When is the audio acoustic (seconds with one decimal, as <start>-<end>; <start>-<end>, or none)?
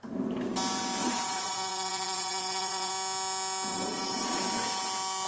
0.0-1.0; 2.9-3.7; 4.4-5.3